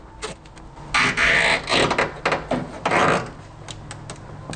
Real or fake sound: real